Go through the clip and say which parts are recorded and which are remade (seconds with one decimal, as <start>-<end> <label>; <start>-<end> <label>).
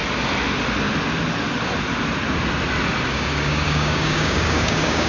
0.0-3.1 recorded; 3.1-5.1 remade